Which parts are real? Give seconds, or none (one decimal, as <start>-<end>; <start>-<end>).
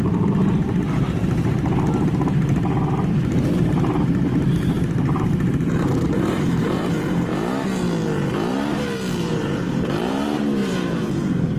7.3-9.2